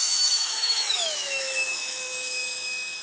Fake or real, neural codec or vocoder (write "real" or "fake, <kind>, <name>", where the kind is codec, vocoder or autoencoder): fake, autoencoder, DAC-VAE